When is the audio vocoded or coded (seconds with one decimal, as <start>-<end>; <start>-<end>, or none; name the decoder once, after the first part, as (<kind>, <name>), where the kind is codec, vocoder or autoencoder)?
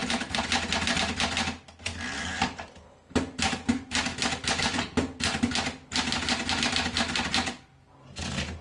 none